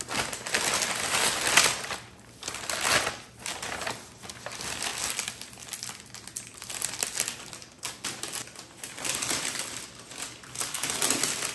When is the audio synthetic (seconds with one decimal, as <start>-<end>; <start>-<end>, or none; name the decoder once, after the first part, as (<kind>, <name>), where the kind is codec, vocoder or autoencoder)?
none